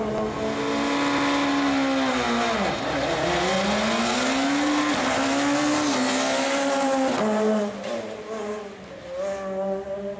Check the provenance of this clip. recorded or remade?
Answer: recorded